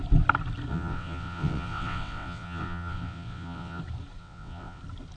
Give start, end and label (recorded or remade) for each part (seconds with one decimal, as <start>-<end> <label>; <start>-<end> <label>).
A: 0.0-0.7 recorded; 0.7-3.8 remade; 3.8-4.2 recorded; 4.2-4.8 remade; 4.8-5.2 recorded